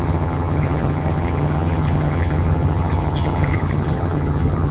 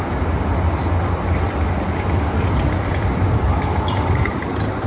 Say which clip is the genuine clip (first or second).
second